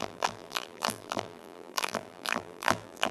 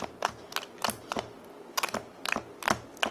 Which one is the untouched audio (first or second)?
second